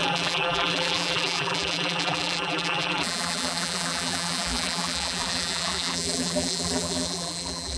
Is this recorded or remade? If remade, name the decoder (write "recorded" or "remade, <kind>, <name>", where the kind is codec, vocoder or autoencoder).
remade, vocoder, BigVGAN v2